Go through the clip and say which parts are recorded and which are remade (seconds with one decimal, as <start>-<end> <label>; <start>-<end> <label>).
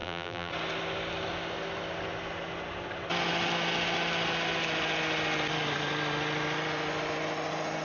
0.0-0.5 remade; 0.5-7.8 recorded